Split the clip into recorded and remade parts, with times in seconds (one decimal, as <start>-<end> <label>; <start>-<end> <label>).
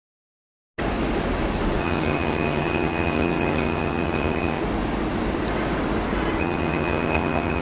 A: 0.0-1.8 recorded; 1.8-4.6 remade; 4.6-6.4 recorded; 6.4-7.6 remade